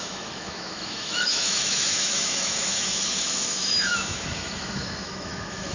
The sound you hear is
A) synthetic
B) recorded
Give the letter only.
A